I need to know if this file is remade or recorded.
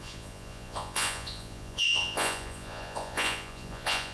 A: remade